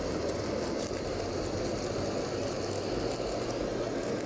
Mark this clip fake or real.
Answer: real